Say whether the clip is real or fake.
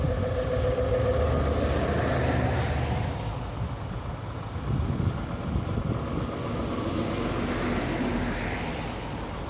real